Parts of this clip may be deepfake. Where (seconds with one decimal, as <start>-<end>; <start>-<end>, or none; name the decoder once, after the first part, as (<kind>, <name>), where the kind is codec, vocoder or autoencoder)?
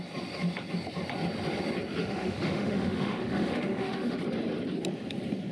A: 2.0-4.2 (autoencoder, DAC-VAE)